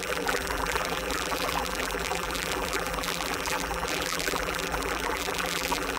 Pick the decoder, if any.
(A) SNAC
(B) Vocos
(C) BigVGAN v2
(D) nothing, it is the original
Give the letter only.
C